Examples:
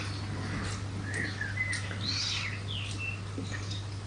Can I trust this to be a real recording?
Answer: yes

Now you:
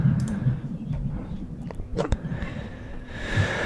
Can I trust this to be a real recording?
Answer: no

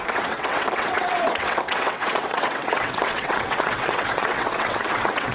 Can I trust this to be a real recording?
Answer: no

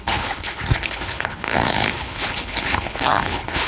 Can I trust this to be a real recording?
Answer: no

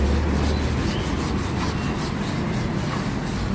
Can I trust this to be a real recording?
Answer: yes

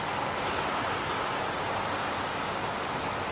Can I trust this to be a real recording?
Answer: yes